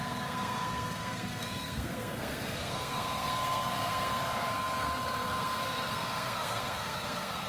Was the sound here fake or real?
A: fake